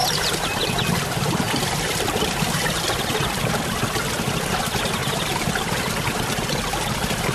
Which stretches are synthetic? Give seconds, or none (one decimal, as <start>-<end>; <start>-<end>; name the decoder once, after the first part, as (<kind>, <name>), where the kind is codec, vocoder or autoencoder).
0.0-3.5 (vocoder, BigVGAN v2); 5.0-5.5